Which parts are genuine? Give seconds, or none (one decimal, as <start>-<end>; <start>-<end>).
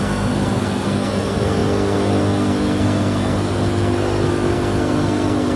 none